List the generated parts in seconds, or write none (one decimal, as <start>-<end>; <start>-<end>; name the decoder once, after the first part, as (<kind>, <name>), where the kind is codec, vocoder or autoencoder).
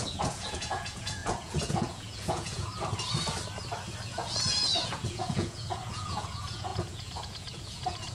0.0-2.7 (vocoder, Vocos); 4.1-8.1